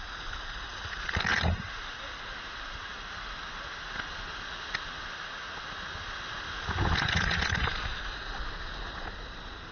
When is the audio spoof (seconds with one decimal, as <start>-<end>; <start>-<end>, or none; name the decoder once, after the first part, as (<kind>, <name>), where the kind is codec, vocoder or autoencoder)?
0.7-5.6 (vocoder, BigVGAN v2)